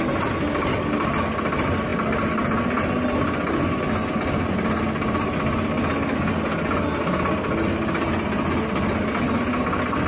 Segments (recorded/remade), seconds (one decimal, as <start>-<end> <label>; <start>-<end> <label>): 0.0-10.1 recorded